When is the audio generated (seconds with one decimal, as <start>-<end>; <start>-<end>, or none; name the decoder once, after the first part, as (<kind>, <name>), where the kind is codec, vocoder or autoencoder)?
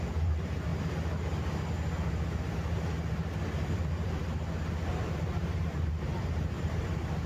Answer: 0.0-0.7 (vocoder, BigVGAN v2); 2.4-4.2; 4.9-7.3